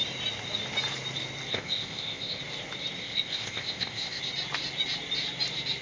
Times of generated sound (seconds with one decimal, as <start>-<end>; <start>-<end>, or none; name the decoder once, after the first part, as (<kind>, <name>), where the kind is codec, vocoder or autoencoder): 1.5-2.4 (codec, ZipCodec); 3.0-4.2